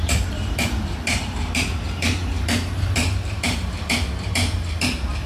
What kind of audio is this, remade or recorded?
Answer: remade